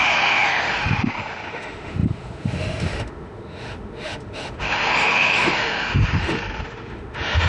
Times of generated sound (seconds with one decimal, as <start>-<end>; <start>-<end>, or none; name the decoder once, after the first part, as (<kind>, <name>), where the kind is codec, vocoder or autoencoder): 0.0-7.5 (autoencoder, DAC-VAE)